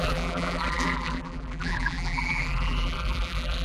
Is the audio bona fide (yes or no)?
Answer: no